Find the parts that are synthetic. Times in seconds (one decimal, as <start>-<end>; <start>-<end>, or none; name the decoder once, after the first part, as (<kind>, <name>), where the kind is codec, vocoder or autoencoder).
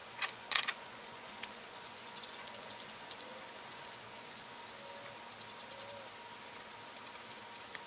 0.0-4.6 (vocoder, Vocos)